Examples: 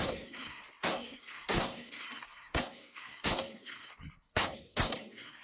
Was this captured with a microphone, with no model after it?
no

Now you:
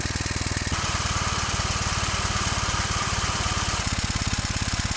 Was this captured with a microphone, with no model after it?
no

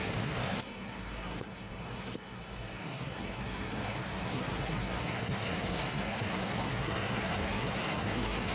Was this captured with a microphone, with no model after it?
no